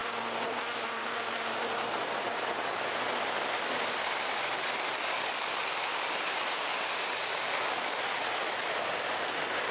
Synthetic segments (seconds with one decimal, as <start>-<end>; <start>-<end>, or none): 0.0-2.4